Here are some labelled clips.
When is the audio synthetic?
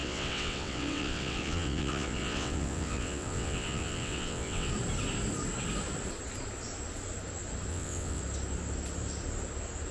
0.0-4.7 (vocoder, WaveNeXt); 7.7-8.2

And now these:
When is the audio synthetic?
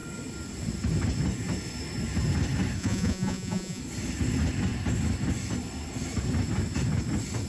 2.8-3.8 (vocoder, Vocos)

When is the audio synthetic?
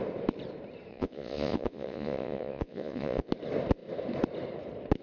0.9-3.3 (vocoder, Vocos)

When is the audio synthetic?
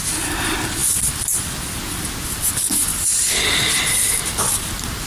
0.8-1.9 (vocoder, BigVGAN v2); 2.9-4.2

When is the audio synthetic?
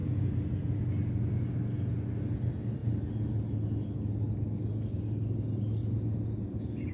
0.0-0.8 (vocoder, Vocos); 5.8-6.9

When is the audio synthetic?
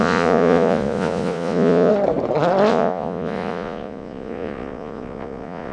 0.0-1.9 (vocoder, Vocos); 2.7-5.7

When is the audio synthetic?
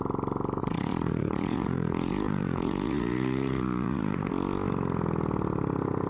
0.6-4.3 (vocoder, Vocos)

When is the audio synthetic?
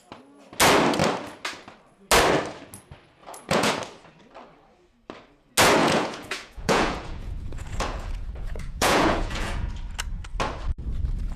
3.2-3.7 (vocoder, Vocos); 5.8-9.7